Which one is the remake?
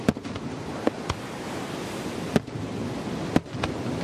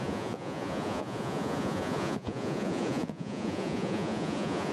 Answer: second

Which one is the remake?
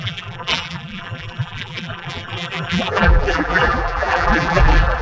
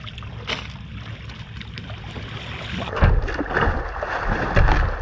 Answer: first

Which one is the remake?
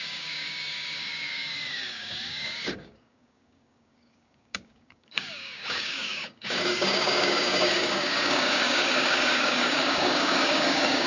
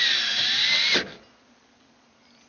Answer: first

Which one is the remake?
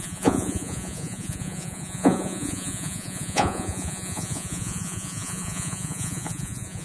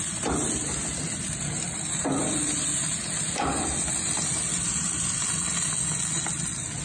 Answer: first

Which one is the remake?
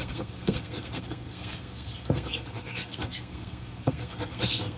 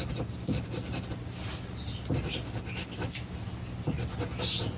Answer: first